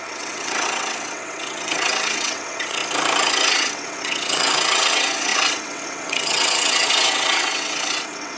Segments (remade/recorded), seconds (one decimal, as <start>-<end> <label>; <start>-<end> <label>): 0.0-2.8 remade; 2.8-3.5 recorded; 3.5-8.4 remade